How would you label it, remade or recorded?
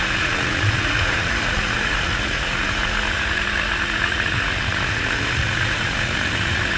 remade